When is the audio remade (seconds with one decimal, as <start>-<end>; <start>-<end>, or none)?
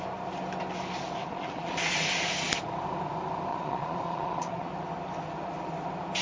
1.2-1.9; 3.5-4.7